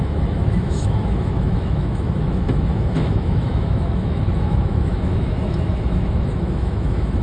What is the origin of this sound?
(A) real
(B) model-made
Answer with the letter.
B